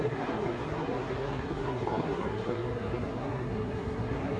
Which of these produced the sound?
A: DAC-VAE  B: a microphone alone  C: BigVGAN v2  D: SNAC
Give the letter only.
D